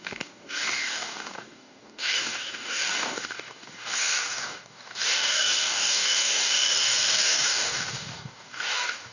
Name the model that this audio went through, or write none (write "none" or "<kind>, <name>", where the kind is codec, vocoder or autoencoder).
codec, DAC